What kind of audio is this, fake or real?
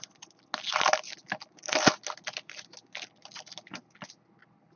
real